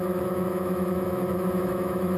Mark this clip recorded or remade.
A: remade